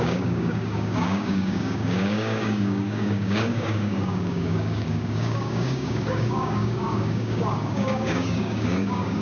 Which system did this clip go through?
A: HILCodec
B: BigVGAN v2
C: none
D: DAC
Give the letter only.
D